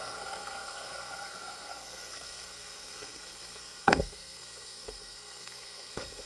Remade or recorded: remade